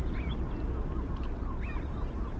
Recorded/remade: recorded